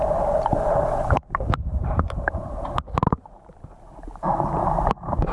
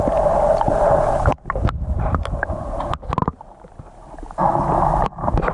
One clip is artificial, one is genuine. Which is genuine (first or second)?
second